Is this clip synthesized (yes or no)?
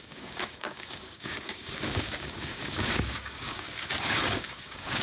yes